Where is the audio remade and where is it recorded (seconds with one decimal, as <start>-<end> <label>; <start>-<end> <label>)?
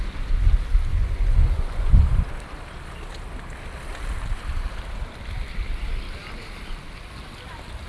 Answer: 0.0-0.9 recorded; 0.9-2.0 remade; 2.0-7.9 recorded